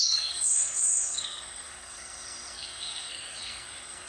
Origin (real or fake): fake